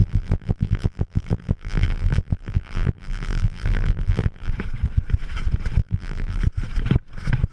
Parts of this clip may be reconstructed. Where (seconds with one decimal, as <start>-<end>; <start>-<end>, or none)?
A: 0.0-4.5; 5.8-6.4